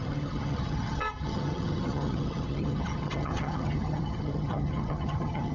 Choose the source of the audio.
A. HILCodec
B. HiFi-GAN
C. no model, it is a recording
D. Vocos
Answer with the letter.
B